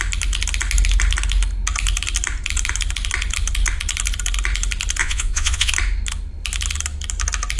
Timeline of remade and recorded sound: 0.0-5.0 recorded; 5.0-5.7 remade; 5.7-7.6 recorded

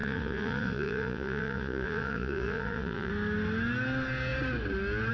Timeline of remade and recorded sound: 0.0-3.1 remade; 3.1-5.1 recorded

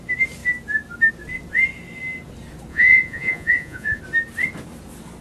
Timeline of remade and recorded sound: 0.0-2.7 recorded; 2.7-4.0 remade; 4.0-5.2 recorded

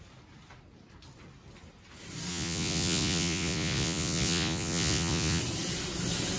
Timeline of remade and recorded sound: 0.0-2.3 recorded; 2.3-5.4 remade; 5.4-6.4 recorded

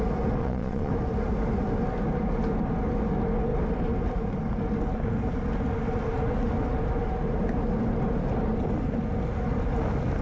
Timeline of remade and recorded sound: 0.0-0.4 recorded; 0.4-0.9 remade; 0.9-10.2 recorded

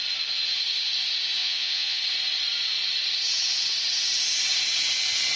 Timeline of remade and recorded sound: 0.0-1.4 recorded; 1.4-2.0 remade; 2.0-5.4 recorded